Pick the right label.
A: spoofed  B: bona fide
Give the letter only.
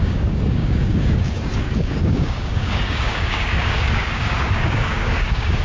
A